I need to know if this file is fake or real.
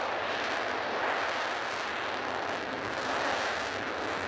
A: real